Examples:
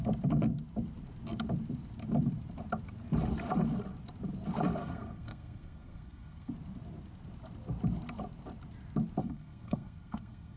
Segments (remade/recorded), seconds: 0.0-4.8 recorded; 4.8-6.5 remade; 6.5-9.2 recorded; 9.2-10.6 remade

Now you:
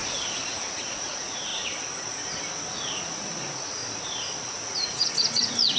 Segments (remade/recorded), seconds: 0.0-1.5 remade; 1.5-3.0 recorded; 3.0-3.8 remade; 3.8-4.4 recorded; 4.4-5.8 remade

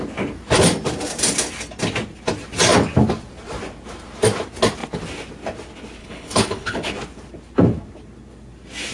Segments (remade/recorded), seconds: 0.0-6.0 recorded; 6.0-6.9 remade; 6.9-8.9 recorded

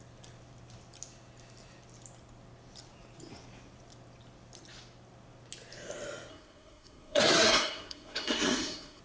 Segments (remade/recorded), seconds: 0.0-6.3 recorded; 6.3-9.0 remade

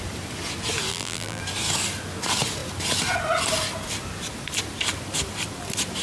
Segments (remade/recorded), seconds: 0.0-0.9 recorded; 0.9-1.4 remade; 1.4-6.0 recorded

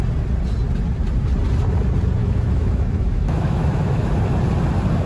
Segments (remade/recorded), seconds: 0.0-2.2 recorded; 2.2-4.1 remade; 4.1-5.1 recorded

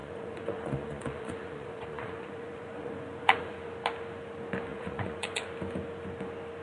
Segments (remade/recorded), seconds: 0.0-3.6 remade; 3.6-4.7 recorded; 4.7-5.5 remade; 5.5-6.6 recorded

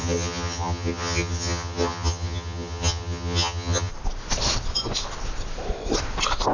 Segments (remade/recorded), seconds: 0.0-3.9 remade; 3.9-6.5 recorded